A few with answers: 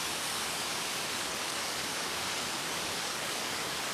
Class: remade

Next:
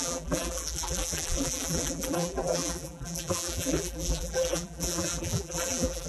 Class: remade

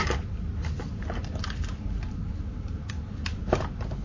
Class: recorded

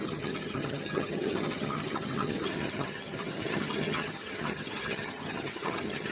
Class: remade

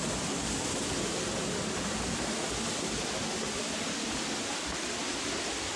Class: recorded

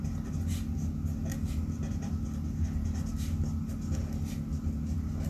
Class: recorded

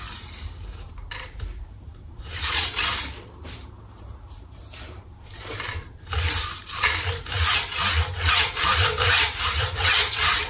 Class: remade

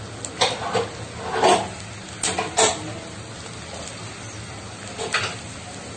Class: recorded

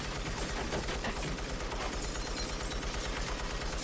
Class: recorded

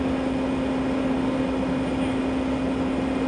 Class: recorded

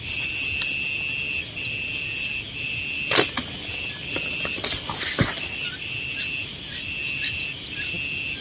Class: recorded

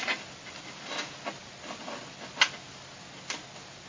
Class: recorded